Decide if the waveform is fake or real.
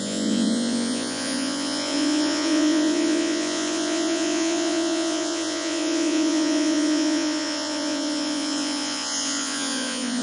fake